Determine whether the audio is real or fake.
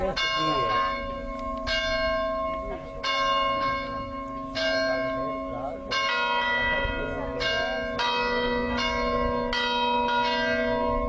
real